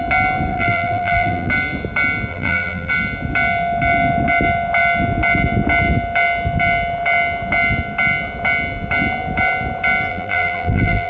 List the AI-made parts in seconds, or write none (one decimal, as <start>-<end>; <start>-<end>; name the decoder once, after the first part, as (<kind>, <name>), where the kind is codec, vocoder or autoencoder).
0.5-1.5 (vocoder, BigVGAN v2); 2.3-2.9; 10.1-11.1